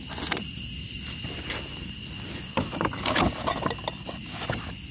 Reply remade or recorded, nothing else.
recorded